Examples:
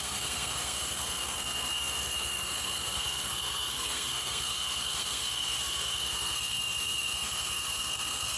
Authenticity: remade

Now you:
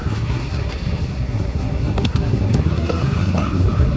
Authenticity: remade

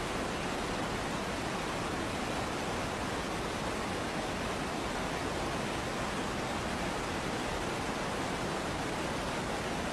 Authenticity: recorded